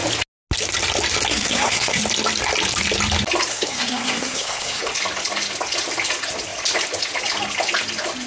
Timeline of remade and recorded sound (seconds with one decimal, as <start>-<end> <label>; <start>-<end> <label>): 0.0-1.3 recorded; 1.3-2.0 remade; 2.0-3.5 recorded; 3.5-4.8 remade; 4.8-8.3 recorded